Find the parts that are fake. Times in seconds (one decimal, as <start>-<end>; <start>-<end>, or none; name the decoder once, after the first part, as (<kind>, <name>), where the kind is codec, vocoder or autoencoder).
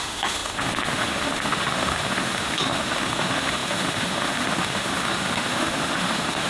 0.0-6.5 (autoencoder, DAC-VAE)